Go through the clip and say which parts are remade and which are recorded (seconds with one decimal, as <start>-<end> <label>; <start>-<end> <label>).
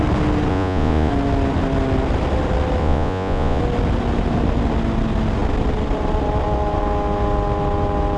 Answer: 0.0-0.5 recorded; 0.5-1.1 remade; 1.1-2.8 recorded; 2.8-3.6 remade; 3.6-8.2 recorded